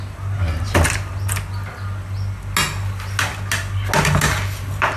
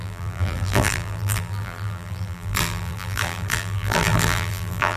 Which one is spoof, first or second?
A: second